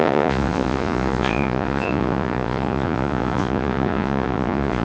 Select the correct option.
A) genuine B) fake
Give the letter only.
B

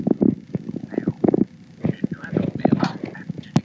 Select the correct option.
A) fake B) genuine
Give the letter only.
B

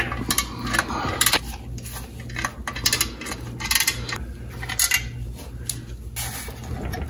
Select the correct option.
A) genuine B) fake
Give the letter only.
A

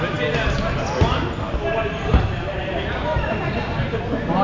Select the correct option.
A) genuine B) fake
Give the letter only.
A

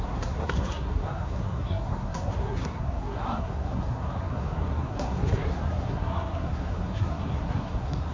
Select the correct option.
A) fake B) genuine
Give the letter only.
A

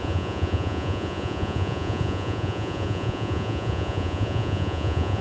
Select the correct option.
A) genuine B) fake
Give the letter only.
B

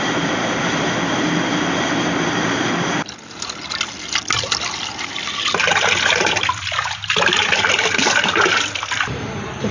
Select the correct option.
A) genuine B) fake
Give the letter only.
A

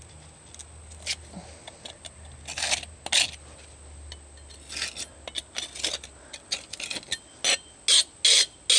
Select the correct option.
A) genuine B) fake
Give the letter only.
A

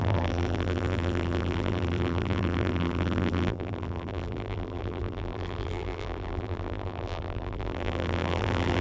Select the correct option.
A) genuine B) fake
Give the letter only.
B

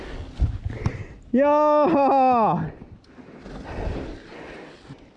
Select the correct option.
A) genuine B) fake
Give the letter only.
A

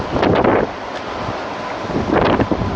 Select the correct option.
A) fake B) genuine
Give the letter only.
B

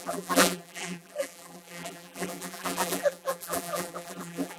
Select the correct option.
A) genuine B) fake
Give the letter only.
B